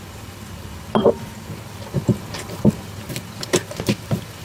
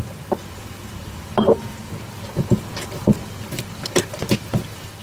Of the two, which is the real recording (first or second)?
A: second